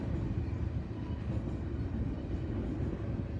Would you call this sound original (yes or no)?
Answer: yes